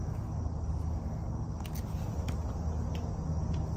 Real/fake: real